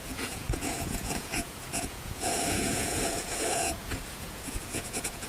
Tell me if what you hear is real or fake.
fake